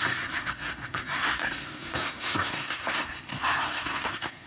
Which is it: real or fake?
fake